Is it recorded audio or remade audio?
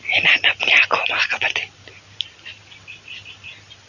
recorded